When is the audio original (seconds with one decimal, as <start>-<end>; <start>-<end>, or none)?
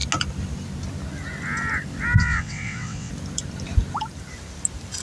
0.0-2.2; 3.1-5.0